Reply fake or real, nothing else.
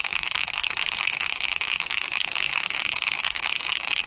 fake